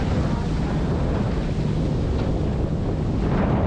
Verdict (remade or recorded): recorded